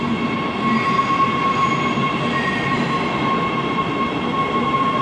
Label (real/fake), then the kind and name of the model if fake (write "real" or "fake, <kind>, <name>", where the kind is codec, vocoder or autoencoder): real